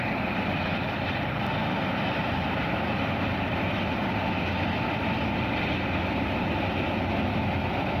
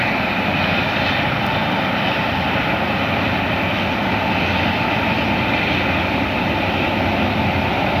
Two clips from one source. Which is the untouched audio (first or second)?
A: second